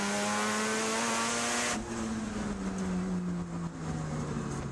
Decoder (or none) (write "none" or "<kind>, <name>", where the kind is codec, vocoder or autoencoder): none